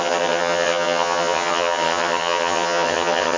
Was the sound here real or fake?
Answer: fake